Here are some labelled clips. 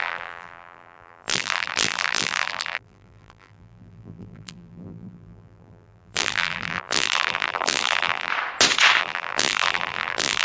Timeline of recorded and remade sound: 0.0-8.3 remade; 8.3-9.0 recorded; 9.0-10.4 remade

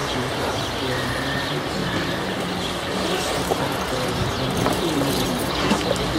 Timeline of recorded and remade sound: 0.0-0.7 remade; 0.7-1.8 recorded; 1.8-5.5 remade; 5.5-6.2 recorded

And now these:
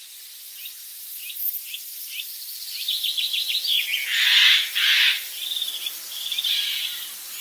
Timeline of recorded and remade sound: 0.0-1.9 recorded; 1.9-3.1 remade; 3.1-7.4 recorded

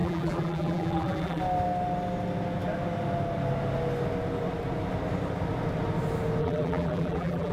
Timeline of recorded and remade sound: 0.0-1.4 remade; 1.4-6.4 recorded; 6.4-7.5 remade

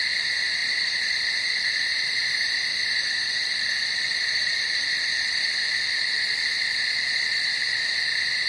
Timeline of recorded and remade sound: 0.0-0.6 recorded; 0.6-2.1 remade; 2.1-3.4 recorded; 3.4-7.3 remade; 7.3-8.5 recorded